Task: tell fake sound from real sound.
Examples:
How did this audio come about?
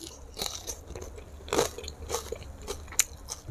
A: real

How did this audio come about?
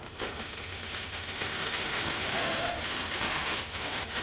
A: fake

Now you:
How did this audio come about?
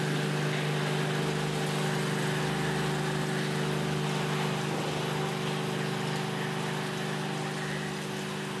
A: real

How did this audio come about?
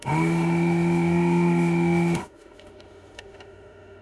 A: fake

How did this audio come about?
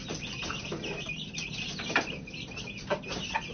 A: real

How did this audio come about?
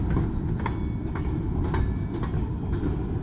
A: real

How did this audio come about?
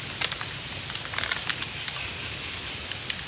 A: real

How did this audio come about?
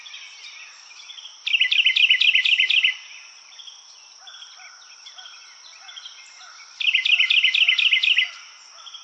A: real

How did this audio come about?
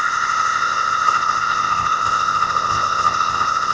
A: fake